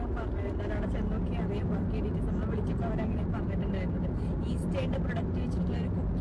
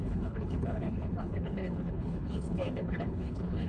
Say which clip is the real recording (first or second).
first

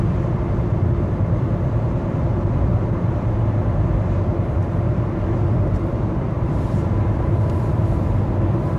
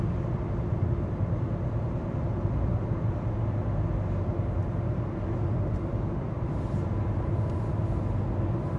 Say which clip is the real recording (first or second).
second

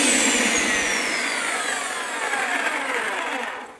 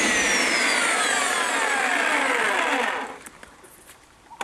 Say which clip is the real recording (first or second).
second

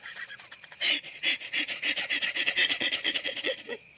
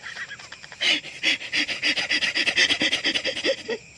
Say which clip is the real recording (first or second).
second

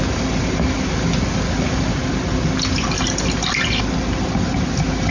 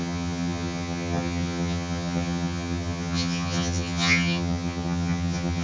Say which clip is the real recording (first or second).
first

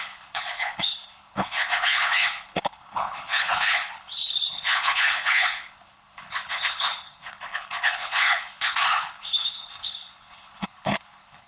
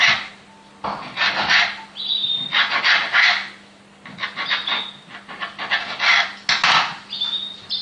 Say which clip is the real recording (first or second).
second